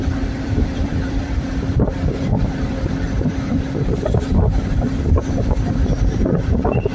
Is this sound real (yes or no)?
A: no